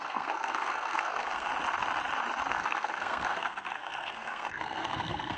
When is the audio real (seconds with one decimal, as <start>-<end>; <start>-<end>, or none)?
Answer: 1.5-2.5